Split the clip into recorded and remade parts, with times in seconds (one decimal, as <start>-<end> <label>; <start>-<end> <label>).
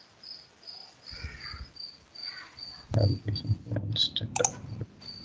0.0-0.8 recorded; 0.8-1.5 remade; 1.5-2.2 recorded; 2.2-3.1 remade; 3.1-5.2 recorded